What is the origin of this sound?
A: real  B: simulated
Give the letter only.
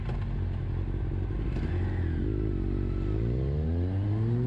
A